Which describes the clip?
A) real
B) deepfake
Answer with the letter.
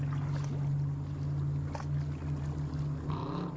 A